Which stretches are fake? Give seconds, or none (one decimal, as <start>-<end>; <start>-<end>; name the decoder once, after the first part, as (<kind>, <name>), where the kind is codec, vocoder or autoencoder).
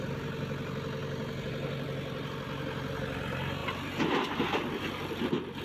none